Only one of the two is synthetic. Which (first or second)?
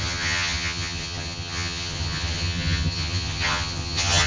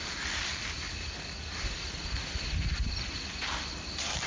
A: first